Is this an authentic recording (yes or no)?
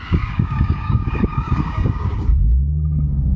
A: no